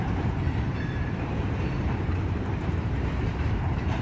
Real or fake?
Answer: fake